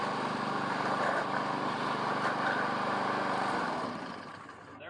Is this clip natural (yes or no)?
no